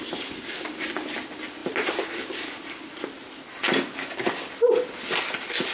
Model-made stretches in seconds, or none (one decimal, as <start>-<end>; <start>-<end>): none